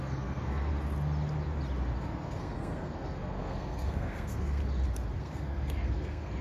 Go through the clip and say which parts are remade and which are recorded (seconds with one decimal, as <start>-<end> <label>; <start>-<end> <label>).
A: 0.0-0.7 remade; 0.7-2.0 recorded; 2.0-4.6 remade; 4.6-5.2 recorded; 5.2-6.4 remade